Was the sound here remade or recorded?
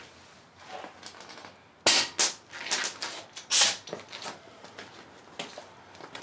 recorded